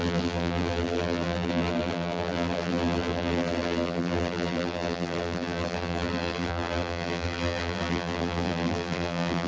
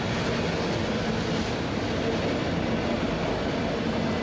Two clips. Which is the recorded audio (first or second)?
second